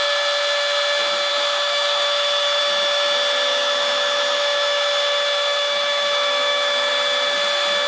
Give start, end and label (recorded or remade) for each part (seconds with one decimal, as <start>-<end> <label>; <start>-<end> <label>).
0.0-1.3 recorded; 1.3-2.6 remade; 2.6-3.5 recorded; 3.5-6.9 remade; 6.9-7.9 recorded